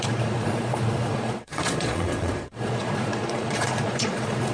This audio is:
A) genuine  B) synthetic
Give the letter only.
B